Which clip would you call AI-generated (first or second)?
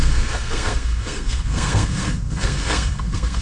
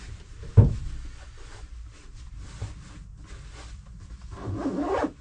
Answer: first